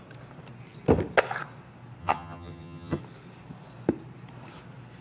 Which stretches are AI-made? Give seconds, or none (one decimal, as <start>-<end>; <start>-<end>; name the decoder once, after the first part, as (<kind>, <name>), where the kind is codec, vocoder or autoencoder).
2.0-3.0 (vocoder, HiFi-GAN)